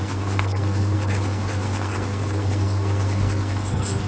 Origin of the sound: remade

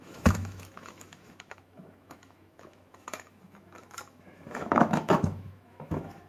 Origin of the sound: remade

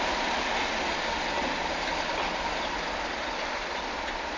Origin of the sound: recorded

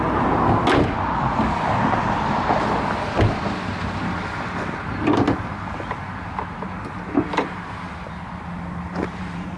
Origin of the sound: recorded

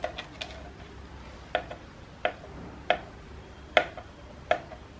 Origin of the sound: recorded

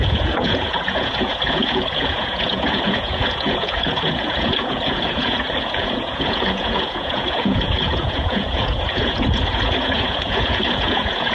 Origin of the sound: remade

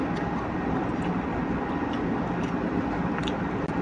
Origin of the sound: recorded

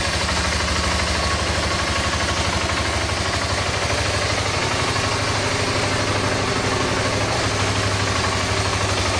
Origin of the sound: recorded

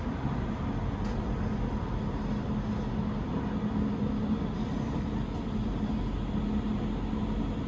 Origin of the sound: recorded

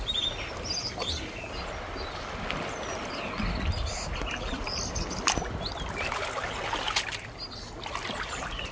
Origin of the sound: recorded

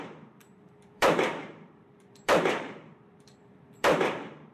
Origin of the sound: remade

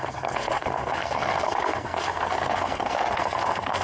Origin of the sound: remade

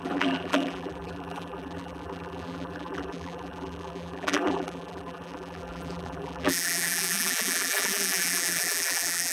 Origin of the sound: remade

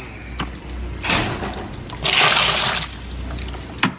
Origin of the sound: recorded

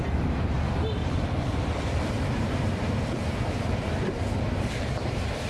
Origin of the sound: remade